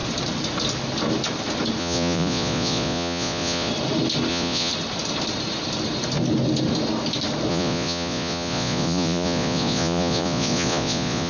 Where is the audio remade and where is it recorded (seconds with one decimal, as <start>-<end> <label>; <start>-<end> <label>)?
0.0-1.8 recorded; 1.8-3.7 remade; 3.7-4.3 recorded; 4.3-4.7 remade; 4.7-7.5 recorded; 7.5-11.3 remade